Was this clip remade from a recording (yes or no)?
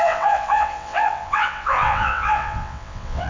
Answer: yes